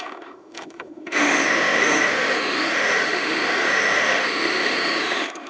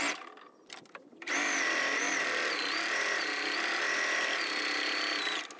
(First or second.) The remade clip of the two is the first